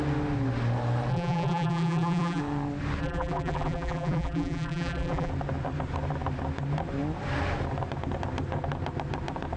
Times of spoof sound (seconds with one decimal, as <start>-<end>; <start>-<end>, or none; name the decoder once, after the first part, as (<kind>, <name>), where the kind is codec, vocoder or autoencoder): 1.1-2.4 (vocoder, BigVGAN v2); 3.0-5.3